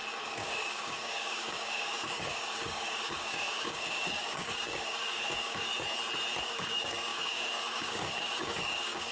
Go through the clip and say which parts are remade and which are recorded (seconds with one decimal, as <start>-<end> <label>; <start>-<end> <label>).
0.0-5.7 remade; 5.7-6.4 recorded; 6.4-9.1 remade